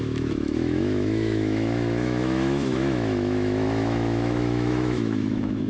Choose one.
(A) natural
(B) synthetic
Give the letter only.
B